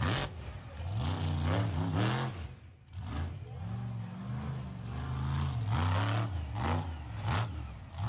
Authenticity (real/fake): real